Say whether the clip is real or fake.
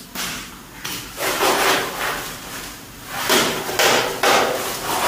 real